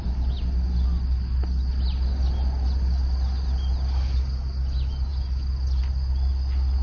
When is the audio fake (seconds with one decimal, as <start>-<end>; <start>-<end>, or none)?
none